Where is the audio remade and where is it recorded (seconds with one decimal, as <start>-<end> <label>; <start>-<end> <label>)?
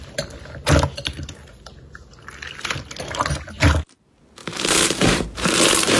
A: 0.0-4.4 recorded; 4.4-5.5 remade; 5.5-6.0 recorded